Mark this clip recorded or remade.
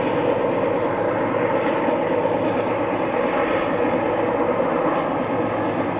recorded